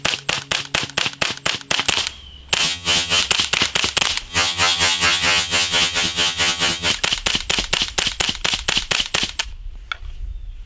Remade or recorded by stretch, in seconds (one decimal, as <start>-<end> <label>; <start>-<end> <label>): 0.0-2.6 recorded; 2.6-3.2 remade; 3.2-4.3 recorded; 4.3-6.9 remade; 6.9-10.7 recorded